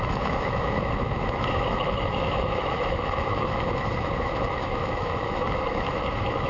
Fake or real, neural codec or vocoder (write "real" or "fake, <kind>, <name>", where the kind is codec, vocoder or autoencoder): fake, autoencoder, DAC-VAE